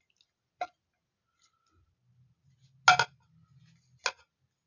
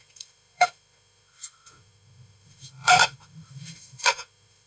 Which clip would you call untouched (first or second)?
first